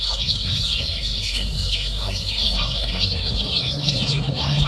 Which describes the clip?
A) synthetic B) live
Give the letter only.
A